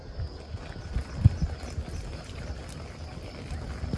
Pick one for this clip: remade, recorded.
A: recorded